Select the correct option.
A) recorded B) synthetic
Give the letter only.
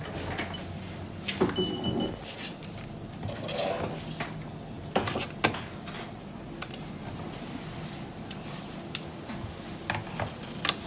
A